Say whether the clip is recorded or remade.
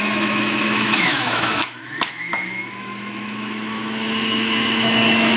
remade